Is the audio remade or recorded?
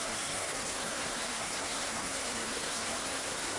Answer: remade